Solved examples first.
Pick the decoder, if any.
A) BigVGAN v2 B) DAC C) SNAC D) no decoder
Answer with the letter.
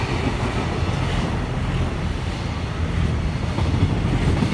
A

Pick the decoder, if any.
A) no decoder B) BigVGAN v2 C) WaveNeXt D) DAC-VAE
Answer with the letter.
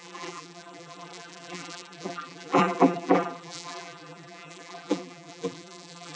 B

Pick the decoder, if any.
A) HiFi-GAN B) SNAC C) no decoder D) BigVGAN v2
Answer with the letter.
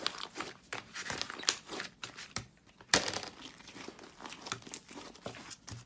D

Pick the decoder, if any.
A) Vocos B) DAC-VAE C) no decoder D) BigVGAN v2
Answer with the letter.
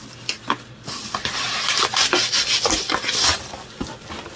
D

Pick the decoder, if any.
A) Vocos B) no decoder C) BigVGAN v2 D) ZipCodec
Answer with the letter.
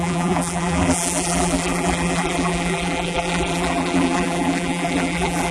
C